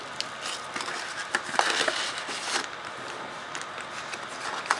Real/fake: real